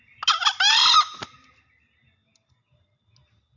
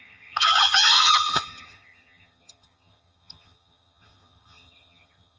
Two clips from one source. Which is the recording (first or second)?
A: first